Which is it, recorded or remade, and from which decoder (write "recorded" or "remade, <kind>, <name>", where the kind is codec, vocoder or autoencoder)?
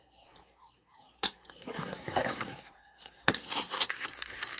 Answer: remade, codec, SNAC